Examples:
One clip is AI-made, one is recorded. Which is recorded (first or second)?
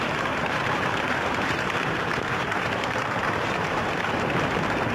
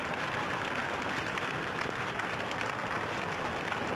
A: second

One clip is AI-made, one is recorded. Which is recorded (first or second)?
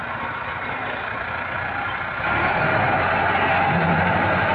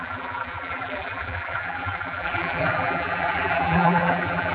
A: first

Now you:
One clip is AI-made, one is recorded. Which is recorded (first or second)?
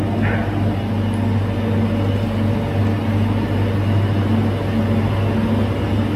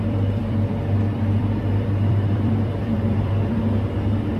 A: first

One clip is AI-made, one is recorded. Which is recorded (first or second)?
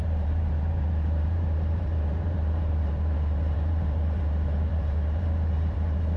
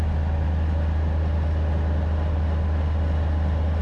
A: second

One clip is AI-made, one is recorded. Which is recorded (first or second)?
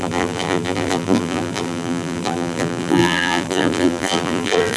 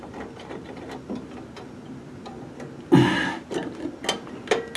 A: second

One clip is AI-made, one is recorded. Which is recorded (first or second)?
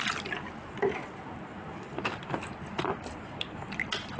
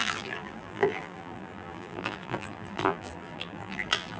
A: first